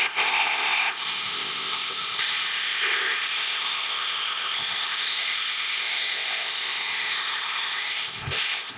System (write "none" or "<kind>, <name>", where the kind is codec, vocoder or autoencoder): codec, ZipCodec